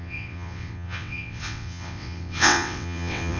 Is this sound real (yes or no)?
no